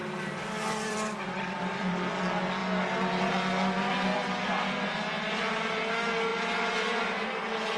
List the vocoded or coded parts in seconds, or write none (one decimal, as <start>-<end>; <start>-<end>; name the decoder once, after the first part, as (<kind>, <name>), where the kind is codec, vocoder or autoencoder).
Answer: 0.0-2.1 (vocoder, BigVGAN v2)